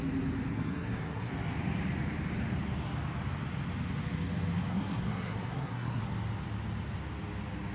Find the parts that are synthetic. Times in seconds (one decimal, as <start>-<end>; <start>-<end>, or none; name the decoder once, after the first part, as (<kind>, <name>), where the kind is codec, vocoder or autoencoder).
0.5-1.3 (codec, SNAC); 4.7-6.0